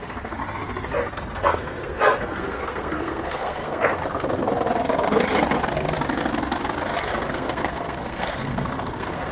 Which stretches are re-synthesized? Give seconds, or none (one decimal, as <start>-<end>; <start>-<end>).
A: 0.0-0.4; 1.1-4.0; 7.3-9.3